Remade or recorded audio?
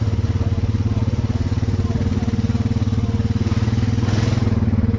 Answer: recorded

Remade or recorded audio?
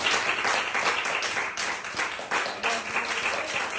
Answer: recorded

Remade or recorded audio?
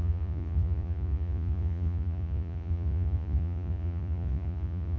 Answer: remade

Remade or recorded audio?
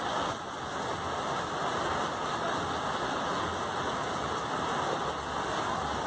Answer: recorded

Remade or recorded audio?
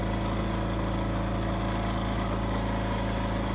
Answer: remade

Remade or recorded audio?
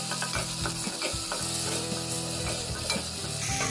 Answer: recorded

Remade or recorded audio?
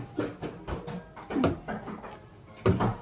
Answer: recorded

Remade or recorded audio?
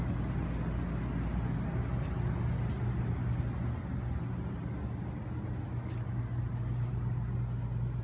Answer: recorded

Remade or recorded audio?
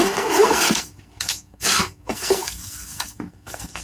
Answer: remade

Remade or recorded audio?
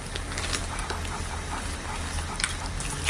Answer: recorded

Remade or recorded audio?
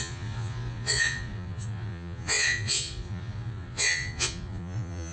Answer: remade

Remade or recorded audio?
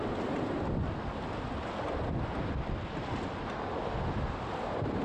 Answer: recorded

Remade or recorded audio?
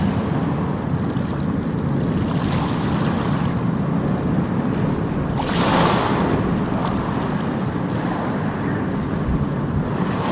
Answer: recorded